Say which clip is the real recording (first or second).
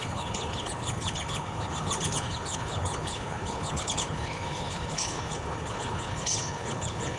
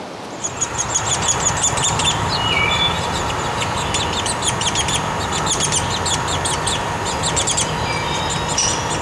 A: second